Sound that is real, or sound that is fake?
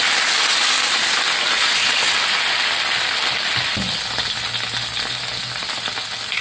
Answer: real